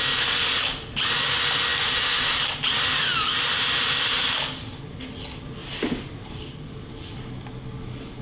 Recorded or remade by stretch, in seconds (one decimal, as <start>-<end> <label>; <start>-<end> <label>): 0.0-3.1 recorded; 3.1-5.0 remade; 5.0-5.6 recorded; 5.6-7.1 remade; 7.1-8.2 recorded